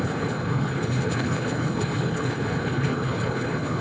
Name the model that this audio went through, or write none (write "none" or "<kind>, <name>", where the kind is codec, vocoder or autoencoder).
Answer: codec, HILCodec